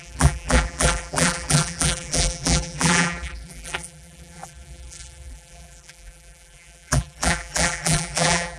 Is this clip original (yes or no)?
no